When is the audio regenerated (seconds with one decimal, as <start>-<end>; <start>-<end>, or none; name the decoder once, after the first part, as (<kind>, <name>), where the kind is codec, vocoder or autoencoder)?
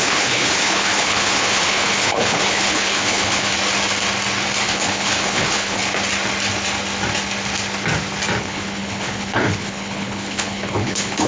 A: 0.0-3.5 (codec, HILCodec); 4.6-5.8; 8.4-11.3